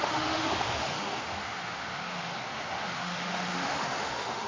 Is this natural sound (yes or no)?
no